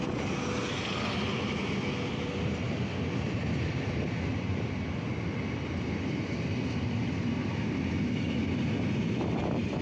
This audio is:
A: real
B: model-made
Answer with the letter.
A